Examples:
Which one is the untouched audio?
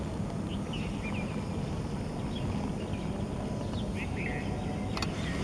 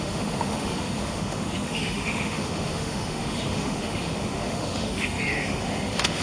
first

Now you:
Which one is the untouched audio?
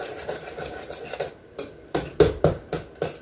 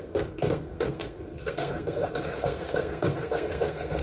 first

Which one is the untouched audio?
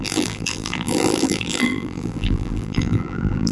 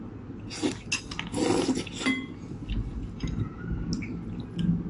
second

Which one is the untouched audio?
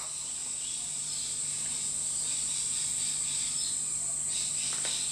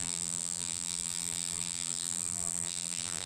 first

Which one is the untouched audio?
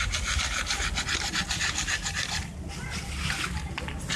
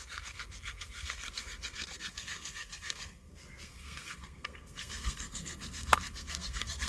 first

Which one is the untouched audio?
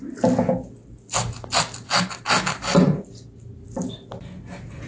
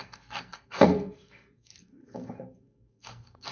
first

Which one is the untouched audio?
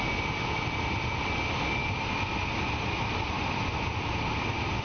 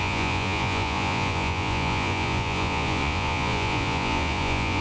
first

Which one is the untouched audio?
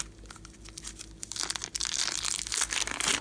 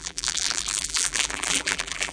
first